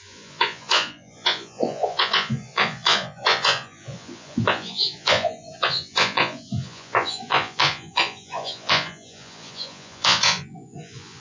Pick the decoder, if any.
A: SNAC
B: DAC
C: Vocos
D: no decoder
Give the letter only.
C